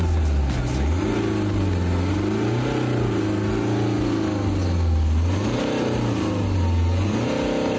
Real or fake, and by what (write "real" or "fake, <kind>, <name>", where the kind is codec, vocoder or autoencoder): real